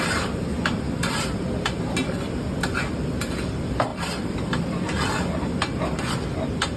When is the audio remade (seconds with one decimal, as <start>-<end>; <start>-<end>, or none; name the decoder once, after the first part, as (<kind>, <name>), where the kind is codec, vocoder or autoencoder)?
3.9-5.5 (vocoder, BigVGAN v2)